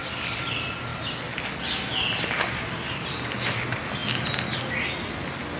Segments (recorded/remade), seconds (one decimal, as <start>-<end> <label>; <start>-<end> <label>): 0.0-5.6 recorded